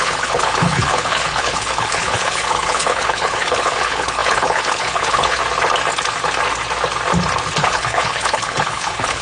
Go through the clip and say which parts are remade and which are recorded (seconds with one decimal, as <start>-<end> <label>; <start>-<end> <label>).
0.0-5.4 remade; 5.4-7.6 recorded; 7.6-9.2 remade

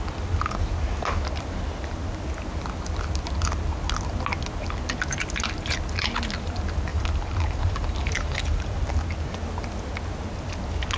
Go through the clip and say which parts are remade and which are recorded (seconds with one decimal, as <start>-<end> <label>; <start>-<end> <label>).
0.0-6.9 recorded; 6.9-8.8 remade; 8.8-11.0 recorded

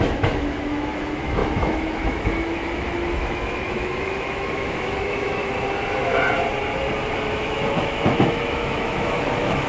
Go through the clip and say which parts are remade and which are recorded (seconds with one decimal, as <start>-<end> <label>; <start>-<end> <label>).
0.0-5.4 remade; 5.4-7.2 recorded; 7.2-9.7 remade